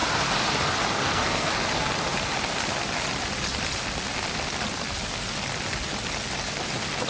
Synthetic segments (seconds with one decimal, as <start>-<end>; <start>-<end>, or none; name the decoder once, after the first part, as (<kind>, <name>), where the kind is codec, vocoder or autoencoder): 1.0-1.5 (codec, SNAC)